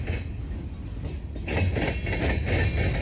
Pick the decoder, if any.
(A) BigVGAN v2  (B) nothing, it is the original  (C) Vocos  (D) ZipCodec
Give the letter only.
B